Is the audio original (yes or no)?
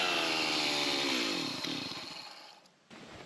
yes